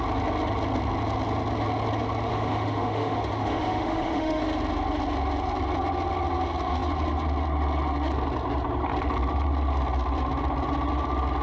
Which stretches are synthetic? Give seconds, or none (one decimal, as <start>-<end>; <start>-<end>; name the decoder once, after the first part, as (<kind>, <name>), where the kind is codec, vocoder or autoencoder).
2.3-4.4 (autoencoder, DAC-VAE)